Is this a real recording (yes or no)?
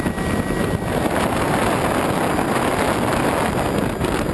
yes